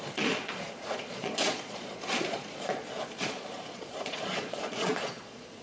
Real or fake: fake